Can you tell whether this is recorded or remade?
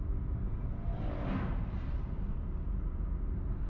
recorded